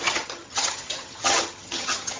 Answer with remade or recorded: remade